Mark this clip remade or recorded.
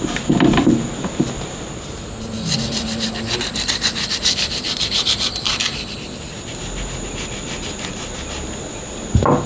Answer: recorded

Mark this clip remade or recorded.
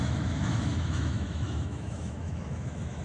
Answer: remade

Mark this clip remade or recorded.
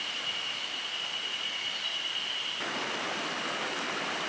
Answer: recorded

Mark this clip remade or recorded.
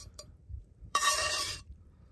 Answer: remade